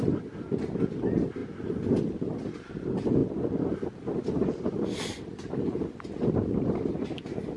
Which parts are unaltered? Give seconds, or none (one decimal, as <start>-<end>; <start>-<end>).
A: 0.0-7.6